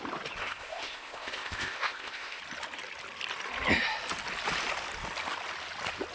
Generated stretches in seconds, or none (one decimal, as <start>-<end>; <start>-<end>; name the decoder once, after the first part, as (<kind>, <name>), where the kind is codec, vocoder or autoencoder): 0.4-2.4 (codec, ZipCodec)